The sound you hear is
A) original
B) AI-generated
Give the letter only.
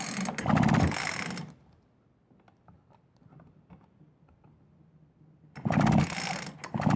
A